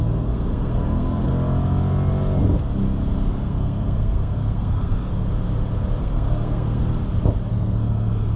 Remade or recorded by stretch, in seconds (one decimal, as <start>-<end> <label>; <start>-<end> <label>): 0.0-1.3 remade; 1.3-3.3 recorded; 3.3-5.3 remade; 5.3-6.0 recorded; 6.0-6.8 remade; 6.8-7.5 recorded; 7.5-8.4 remade